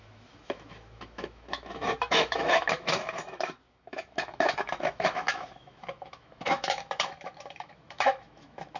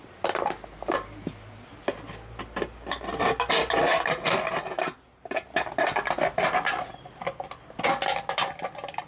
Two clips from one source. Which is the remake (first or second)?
first